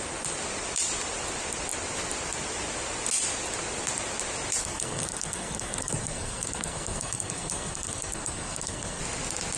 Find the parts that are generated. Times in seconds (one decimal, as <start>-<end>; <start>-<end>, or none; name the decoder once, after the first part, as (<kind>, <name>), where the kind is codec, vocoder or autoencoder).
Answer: 4.6-9.0 (codec, SNAC)